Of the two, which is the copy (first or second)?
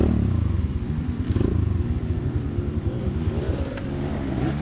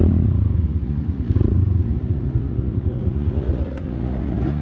second